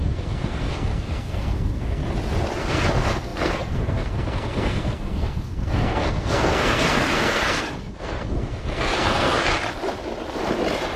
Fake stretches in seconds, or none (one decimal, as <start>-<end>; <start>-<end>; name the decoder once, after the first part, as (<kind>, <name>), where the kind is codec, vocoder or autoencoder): 0.0-2.0 (codec, SNAC); 2.6-9.5